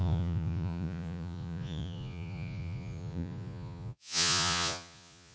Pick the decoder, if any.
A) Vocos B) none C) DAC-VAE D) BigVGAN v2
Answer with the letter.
A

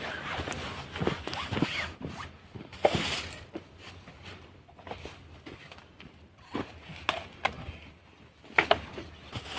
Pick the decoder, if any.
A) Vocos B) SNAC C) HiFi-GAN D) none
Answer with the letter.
D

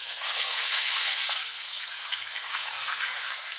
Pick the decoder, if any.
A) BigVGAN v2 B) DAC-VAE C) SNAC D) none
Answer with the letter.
C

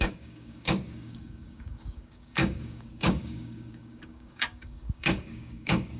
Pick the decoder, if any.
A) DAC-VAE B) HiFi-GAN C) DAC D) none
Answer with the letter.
C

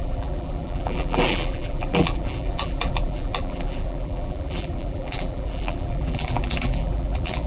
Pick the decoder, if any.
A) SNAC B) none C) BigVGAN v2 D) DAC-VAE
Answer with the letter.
C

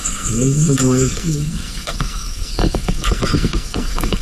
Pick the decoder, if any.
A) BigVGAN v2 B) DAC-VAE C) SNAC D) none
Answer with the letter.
C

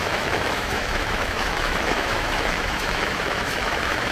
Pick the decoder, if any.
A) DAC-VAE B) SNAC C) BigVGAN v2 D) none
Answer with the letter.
A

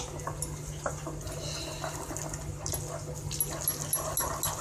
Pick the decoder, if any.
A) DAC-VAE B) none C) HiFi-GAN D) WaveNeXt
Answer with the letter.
B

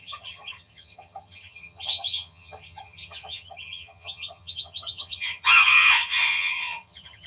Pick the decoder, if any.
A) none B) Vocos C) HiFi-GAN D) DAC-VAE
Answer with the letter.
C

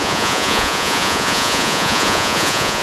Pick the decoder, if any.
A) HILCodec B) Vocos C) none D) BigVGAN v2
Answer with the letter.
B